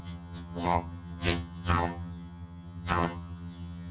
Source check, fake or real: fake